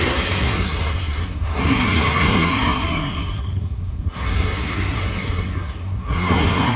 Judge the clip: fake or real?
fake